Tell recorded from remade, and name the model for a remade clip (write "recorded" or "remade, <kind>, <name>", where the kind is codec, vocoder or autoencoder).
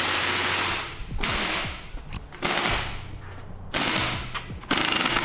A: recorded